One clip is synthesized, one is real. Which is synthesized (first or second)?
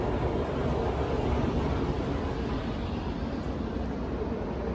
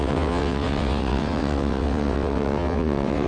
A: second